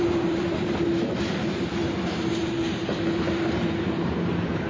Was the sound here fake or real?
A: fake